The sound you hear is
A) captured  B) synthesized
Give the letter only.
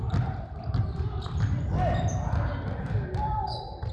A